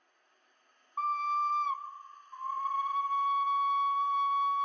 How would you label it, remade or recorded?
recorded